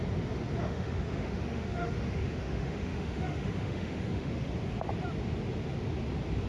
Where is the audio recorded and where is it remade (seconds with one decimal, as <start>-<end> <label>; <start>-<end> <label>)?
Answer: 0.0-0.6 recorded; 0.6-4.5 remade; 4.5-6.5 recorded